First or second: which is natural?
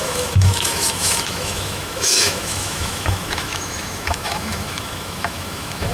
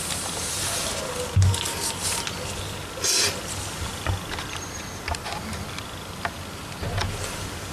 second